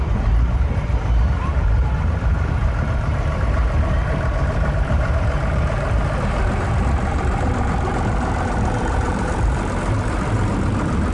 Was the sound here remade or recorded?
remade